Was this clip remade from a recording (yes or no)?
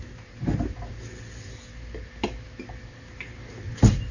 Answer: no